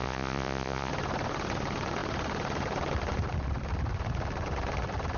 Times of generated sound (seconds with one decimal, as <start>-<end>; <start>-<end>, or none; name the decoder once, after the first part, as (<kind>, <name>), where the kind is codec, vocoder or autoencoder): 0.0-0.9 (vocoder, Vocos)

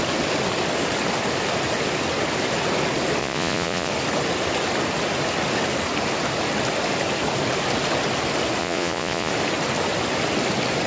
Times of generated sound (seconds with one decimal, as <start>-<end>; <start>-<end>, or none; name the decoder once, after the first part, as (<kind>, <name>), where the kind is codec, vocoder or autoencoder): 3.2-3.9 (vocoder, Vocos); 8.6-9.3

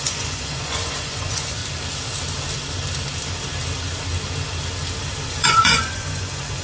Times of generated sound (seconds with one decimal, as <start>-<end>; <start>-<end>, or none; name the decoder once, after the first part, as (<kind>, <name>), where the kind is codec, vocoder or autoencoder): 0.0-1.6 (vocoder, Vocos); 5.3-6.6

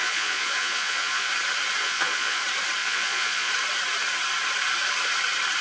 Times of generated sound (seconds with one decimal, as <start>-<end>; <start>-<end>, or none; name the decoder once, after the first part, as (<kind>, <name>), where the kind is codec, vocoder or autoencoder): 0.0-1.3 (vocoder, Vocos); 1.8-2.4; 2.8-3.5